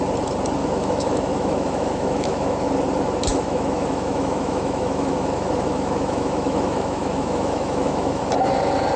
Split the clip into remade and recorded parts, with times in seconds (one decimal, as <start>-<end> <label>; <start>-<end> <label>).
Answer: 0.0-0.6 recorded; 0.6-2.7 remade; 2.7-3.3 recorded; 3.3-8.2 remade; 8.2-9.0 recorded